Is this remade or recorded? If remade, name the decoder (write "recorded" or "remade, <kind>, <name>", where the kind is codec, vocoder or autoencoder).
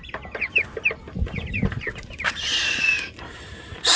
remade, vocoder, BigVGAN v2